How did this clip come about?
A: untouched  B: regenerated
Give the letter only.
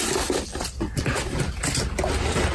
A